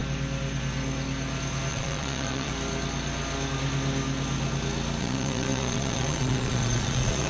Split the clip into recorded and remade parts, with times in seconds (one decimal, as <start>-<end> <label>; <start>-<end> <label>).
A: 0.0-1.7 recorded; 1.7-2.5 remade; 2.5-5.0 recorded; 5.0-7.3 remade